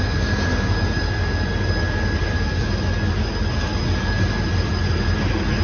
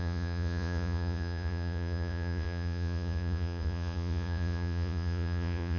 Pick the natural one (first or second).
first